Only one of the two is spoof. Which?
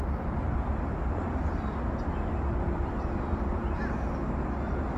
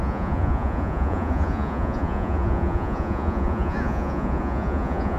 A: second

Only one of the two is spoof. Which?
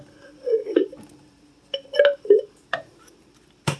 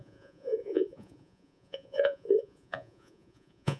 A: second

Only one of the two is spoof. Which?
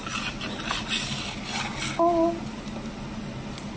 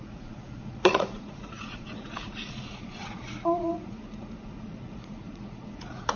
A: second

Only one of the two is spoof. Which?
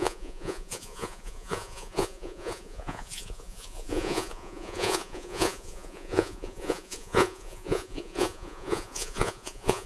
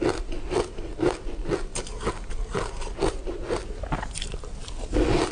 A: first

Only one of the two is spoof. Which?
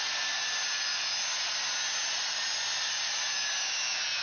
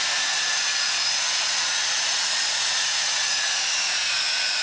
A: second